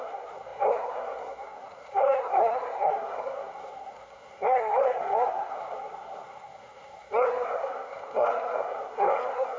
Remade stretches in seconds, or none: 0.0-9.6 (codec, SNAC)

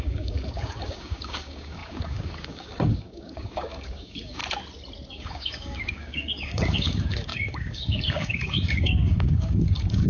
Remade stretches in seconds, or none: 0.0-4.4 (codec, DAC); 5.1-10.1

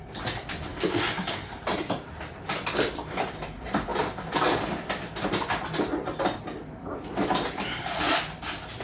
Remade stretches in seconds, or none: none

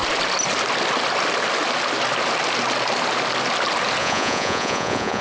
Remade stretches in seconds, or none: 4.0-5.2 (vocoder, Vocos)